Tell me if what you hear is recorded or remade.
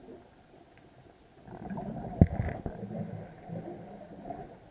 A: recorded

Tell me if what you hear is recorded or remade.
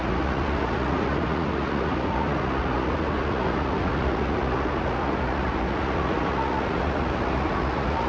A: remade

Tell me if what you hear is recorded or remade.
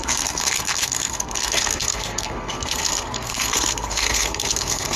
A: remade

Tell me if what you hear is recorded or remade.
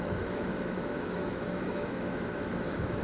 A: remade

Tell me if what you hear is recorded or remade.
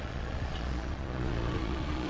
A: remade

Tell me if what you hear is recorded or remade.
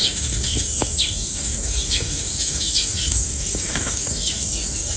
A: remade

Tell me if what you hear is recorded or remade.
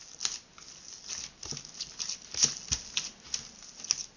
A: recorded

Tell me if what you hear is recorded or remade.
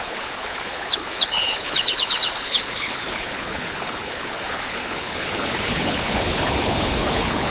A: remade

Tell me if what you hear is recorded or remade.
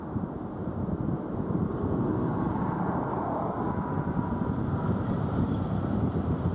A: recorded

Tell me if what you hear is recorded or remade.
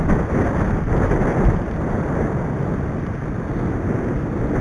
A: recorded